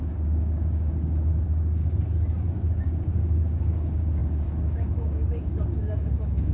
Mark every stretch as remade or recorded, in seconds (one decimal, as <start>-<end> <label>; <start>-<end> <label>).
0.0-1.8 remade; 1.8-2.5 recorded; 2.5-6.5 remade